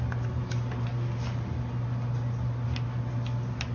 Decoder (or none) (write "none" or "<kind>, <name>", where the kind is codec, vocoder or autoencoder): none